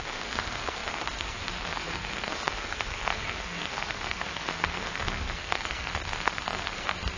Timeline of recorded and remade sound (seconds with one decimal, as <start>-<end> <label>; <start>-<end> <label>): 0.0-7.2 remade